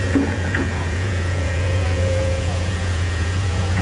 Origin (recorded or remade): remade